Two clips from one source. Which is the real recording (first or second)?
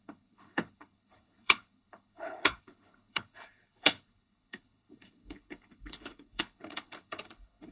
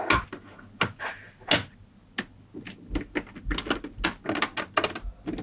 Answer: second